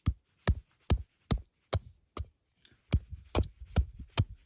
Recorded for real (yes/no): yes